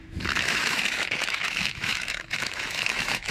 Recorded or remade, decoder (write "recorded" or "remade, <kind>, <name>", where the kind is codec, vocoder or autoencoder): remade, autoencoder, DAC-VAE